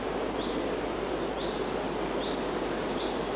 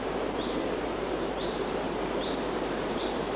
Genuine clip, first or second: first